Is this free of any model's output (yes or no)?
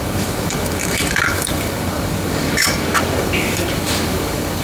no